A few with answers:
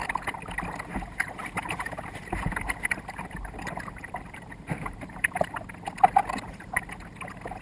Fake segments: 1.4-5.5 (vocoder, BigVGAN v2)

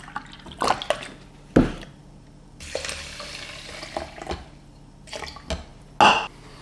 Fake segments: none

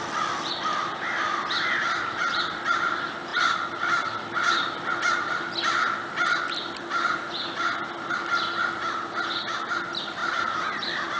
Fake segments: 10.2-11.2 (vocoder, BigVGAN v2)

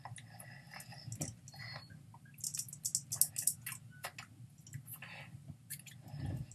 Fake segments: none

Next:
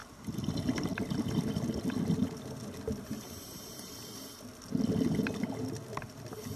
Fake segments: 3.0-3.9 (vocoder, BigVGAN v2)